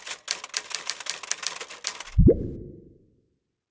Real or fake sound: real